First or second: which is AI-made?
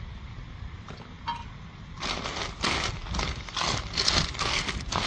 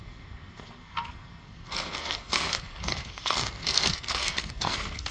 second